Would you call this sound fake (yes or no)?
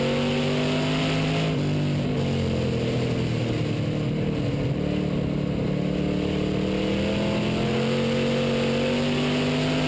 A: no